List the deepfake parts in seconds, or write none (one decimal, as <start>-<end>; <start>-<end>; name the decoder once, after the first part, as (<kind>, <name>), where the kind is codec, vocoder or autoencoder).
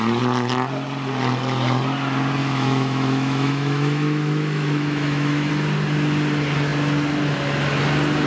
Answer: 2.4-5.5 (autoencoder, DAC-VAE)